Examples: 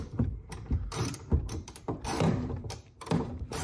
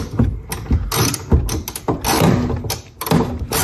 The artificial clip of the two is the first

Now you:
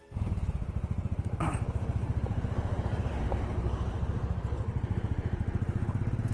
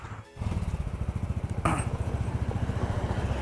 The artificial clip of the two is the first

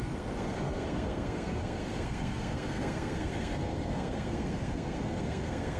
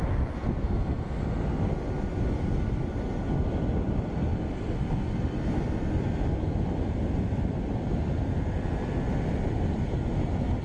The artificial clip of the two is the first